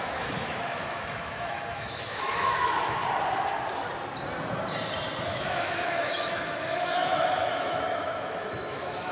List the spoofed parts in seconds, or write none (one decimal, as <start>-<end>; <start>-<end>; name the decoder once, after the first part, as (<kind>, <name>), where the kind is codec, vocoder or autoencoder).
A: 0.0-3.0 (autoencoder, DAC-VAE); 5.2-9.1